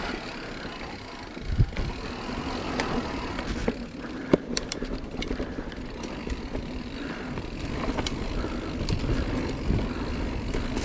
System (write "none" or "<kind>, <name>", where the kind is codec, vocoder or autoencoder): none